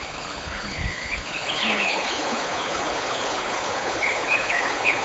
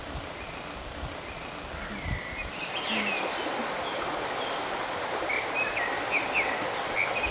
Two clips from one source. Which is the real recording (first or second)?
second